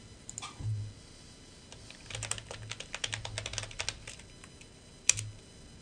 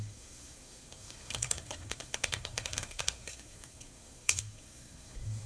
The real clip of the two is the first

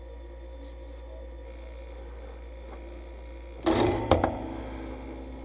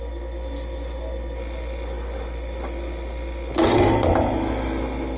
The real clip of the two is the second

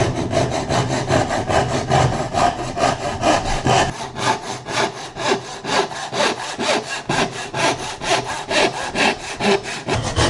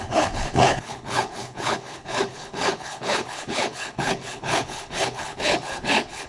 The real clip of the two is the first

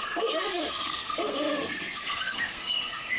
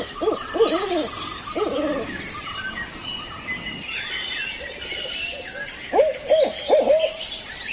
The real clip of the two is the second